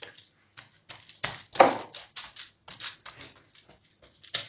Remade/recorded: recorded